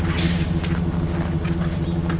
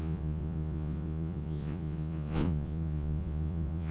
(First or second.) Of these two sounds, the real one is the first